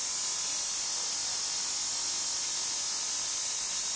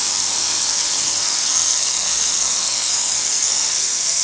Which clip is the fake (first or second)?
second